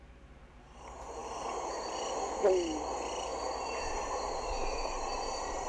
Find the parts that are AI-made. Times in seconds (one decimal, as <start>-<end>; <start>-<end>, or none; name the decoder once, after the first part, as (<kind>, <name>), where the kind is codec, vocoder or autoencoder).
none